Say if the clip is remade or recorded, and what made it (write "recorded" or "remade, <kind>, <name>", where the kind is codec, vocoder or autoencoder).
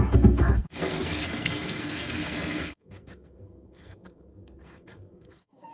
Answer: remade, codec, SNAC